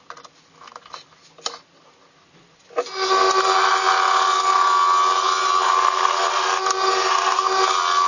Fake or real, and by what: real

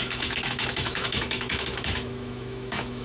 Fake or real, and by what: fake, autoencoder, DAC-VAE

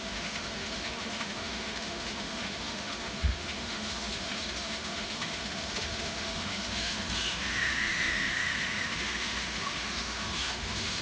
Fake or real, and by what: fake, autoencoder, DAC-VAE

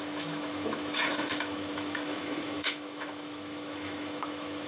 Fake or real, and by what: fake, autoencoder, DAC-VAE